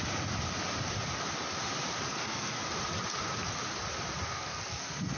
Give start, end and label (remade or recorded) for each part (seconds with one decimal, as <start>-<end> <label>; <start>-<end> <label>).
0.0-2.1 recorded; 2.1-2.7 remade; 2.7-4.3 recorded; 4.3-5.2 remade